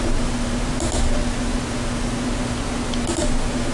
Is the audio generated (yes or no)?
no